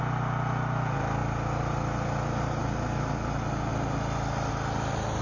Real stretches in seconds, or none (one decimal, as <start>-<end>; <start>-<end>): 0.0-5.2